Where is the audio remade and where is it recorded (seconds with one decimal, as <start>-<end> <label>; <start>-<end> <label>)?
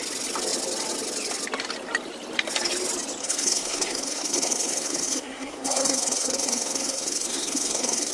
0.0-3.2 recorded; 3.2-8.1 remade